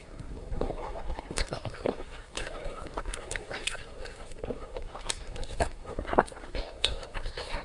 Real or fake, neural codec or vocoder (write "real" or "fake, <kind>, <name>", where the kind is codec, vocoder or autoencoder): fake, codec, SNAC